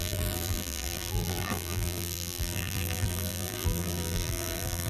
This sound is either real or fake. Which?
fake